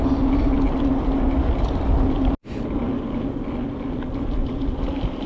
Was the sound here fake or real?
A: real